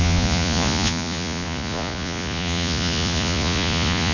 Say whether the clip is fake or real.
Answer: fake